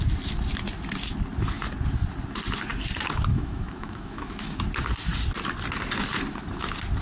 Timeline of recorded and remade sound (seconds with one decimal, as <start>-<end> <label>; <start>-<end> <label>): 0.0-3.3 recorded; 3.3-4.6 remade; 4.6-7.0 recorded